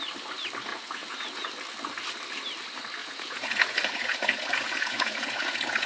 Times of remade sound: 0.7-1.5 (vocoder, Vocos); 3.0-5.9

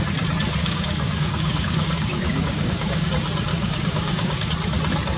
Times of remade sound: 0.6-3.1 (codec, DAC); 3.5-4.5

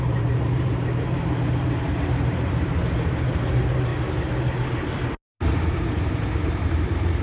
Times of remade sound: 0.0-3.9 (vocoder, BigVGAN v2); 6.1-7.2

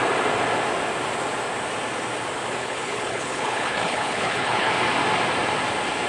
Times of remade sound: 2.6-4.7 (codec, HILCodec)

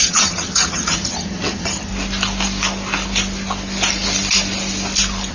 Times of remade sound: 0.0-1.9 (vocoder, HiFi-GAN)